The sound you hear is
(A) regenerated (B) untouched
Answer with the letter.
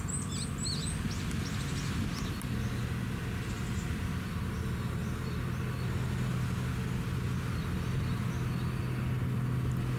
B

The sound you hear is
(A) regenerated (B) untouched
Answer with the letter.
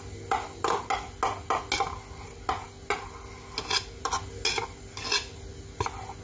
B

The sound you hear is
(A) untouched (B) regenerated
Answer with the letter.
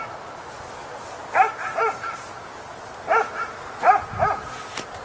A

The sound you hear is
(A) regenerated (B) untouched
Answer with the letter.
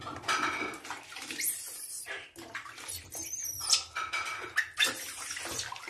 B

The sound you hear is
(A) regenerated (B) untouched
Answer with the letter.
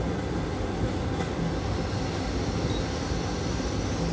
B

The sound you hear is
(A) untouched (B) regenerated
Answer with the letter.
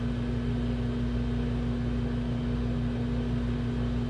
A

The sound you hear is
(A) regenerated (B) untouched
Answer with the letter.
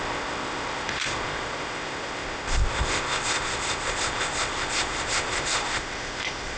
A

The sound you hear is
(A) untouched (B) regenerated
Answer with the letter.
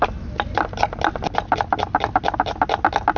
A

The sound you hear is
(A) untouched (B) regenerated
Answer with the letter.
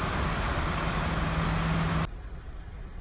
A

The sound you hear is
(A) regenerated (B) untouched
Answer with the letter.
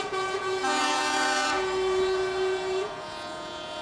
A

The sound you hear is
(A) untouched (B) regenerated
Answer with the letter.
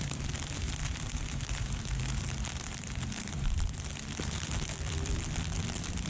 B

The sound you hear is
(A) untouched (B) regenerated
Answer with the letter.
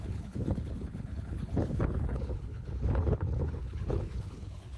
B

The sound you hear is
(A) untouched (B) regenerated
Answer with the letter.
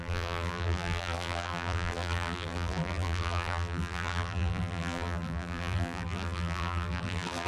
B